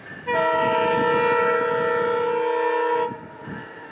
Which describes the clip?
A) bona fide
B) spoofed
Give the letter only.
A